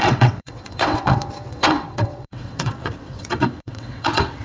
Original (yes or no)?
no